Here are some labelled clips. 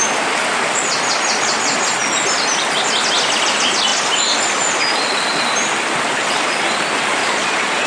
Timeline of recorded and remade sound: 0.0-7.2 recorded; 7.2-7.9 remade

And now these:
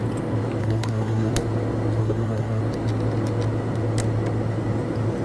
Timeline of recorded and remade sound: 0.0-0.6 recorded; 0.6-1.3 remade; 1.3-2.0 recorded; 2.0-2.6 remade; 2.6-5.2 recorded

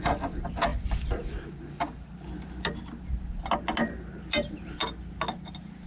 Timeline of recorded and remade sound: 0.0-5.9 recorded

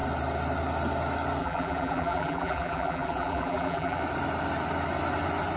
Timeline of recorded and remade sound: 0.0-1.4 recorded; 1.4-4.0 remade; 4.0-5.6 recorded

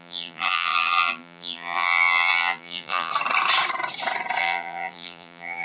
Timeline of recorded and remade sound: 0.0-3.1 remade; 3.1-4.4 recorded; 4.4-5.6 remade